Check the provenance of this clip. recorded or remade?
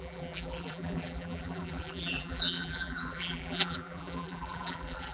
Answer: remade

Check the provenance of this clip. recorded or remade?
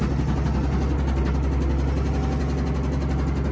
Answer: recorded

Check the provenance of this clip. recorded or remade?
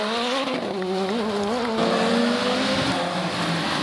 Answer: recorded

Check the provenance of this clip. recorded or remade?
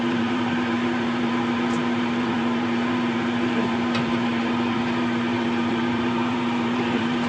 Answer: remade